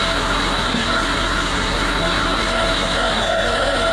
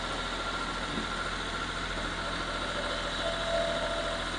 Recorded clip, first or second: second